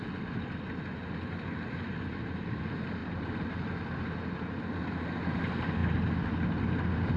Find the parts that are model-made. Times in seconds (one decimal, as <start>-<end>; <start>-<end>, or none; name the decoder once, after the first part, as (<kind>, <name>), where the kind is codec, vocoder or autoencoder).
none